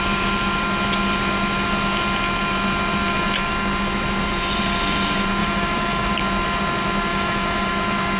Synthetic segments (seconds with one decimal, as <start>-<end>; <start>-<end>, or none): 5.4-6.1; 7.1-7.7